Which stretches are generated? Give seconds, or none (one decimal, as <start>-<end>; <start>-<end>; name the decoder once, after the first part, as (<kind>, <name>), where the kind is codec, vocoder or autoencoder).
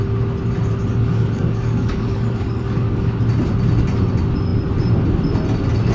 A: 0.9-3.2 (codec, DAC)